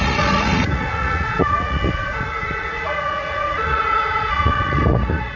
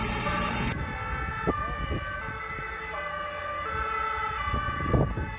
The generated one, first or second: first